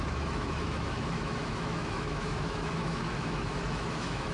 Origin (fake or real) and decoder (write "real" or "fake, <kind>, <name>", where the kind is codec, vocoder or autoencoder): fake, autoencoder, DAC-VAE